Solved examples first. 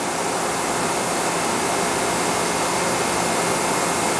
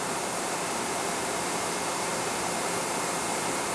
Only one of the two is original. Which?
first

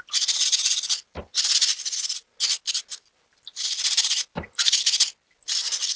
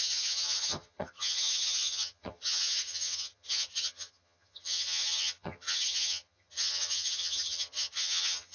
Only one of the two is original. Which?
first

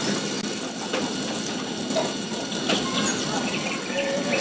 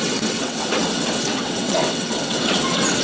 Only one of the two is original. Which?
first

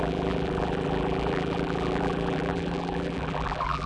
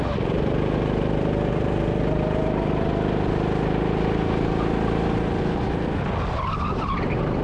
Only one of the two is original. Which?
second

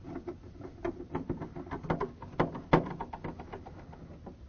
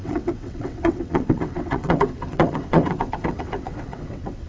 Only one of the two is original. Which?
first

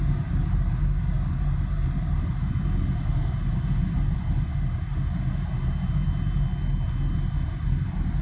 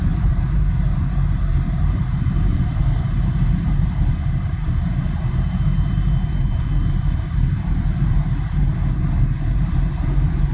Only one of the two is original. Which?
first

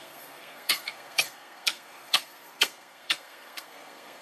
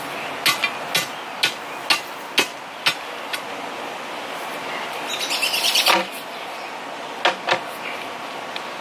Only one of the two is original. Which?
second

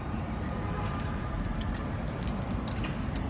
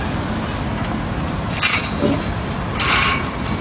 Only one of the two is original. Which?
second